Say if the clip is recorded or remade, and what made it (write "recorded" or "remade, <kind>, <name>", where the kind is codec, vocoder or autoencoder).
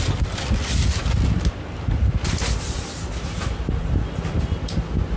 recorded